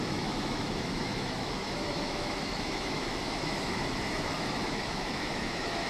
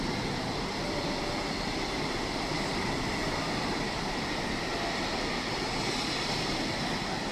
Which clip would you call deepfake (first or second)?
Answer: first